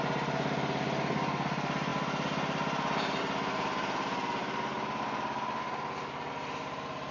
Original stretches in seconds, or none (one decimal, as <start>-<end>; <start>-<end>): 0.0-7.1